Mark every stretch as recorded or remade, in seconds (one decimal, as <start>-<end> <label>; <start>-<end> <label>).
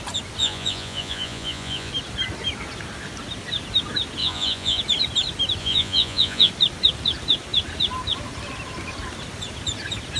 0.0-0.4 recorded; 0.4-1.9 remade; 1.9-4.2 recorded; 4.2-4.8 remade; 4.8-5.6 recorded; 5.6-6.5 remade; 6.5-10.2 recorded